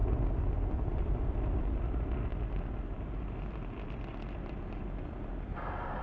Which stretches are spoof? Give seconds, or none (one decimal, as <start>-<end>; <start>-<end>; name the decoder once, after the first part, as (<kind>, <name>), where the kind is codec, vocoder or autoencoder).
none